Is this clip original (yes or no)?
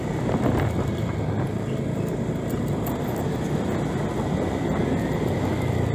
yes